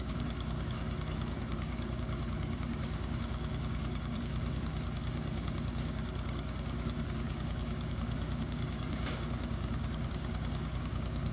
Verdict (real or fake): fake